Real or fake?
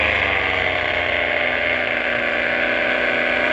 real